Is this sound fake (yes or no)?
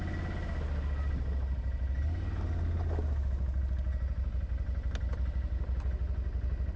no